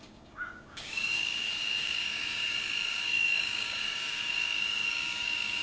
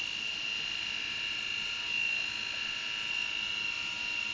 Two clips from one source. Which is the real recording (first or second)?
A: second